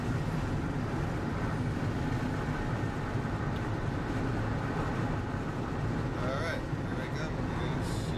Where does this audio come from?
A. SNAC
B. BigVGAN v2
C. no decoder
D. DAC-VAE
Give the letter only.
C